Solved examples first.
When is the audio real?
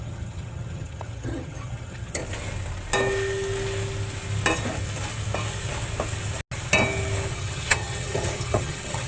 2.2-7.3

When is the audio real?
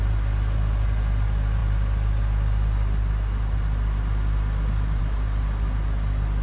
0.0-6.4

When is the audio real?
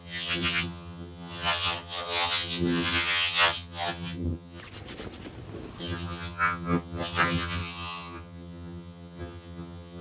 4.6-5.8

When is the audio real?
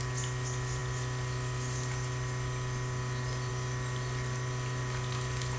0.0-5.6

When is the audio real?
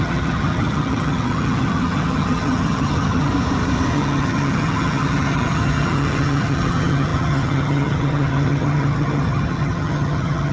3.3-3.9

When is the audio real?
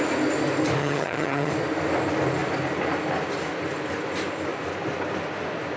0.0-0.8; 1.5-5.8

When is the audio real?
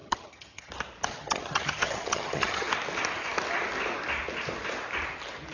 0.7-1.1; 2.7-5.5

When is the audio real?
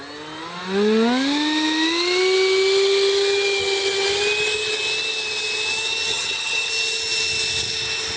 0.0-6.1; 6.7-8.2